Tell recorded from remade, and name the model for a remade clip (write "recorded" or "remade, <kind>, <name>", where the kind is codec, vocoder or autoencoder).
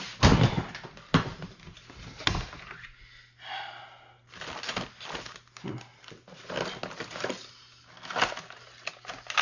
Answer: recorded